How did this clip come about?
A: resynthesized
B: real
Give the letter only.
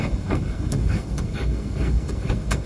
A